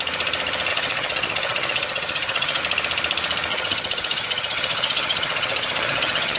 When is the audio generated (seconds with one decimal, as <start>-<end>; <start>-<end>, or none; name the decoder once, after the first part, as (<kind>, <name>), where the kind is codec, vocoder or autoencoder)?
0.7-2.6 (vocoder, HiFi-GAN); 3.5-6.4